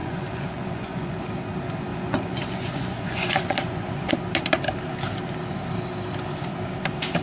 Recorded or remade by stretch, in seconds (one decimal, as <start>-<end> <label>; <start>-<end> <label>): 0.0-1.2 remade; 1.2-1.9 recorded; 1.9-4.1 remade; 4.1-7.2 recorded